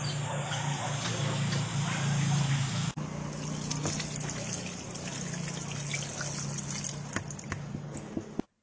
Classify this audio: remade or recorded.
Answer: recorded